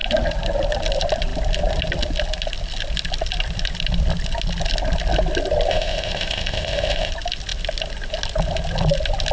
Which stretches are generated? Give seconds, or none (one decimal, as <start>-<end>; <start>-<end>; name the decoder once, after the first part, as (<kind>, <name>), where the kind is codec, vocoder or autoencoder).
5.7-7.1 (codec, ZipCodec)